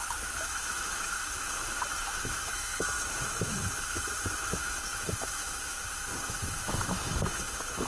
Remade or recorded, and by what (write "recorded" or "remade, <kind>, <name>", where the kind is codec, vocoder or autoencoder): remade, autoencoder, DAC-VAE